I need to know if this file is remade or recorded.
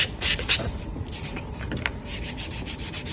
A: remade